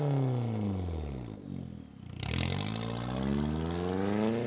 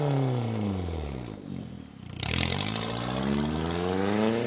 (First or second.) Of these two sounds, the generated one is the second